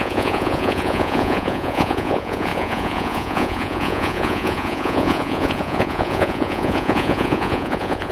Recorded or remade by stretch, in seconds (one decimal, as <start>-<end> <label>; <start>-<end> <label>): 0.0-8.1 remade